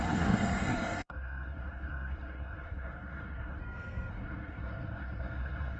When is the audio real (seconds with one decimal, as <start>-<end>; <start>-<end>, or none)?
3.6-4.1